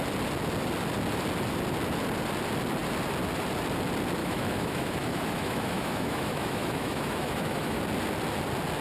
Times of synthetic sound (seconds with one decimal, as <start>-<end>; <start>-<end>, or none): 4.2-7.8

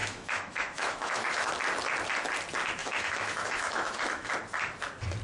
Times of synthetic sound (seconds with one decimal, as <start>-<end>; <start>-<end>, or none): 0.0-1.5; 2.8-4.3

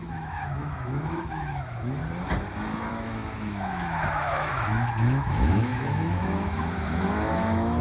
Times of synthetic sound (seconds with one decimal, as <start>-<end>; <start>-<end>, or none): 0.0-2.0; 2.9-7.8

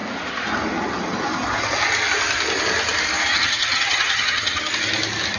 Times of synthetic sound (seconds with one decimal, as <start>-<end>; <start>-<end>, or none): 3.3-4.7

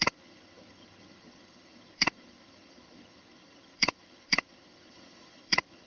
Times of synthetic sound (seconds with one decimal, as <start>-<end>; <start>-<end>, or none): 0.0-5.9